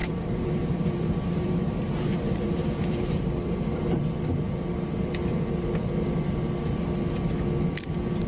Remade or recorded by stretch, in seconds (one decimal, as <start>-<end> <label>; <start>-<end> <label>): 0.0-3.3 remade; 3.3-8.3 recorded